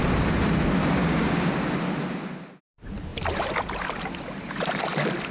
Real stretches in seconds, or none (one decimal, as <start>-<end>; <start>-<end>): 0.0-1.0; 1.5-5.3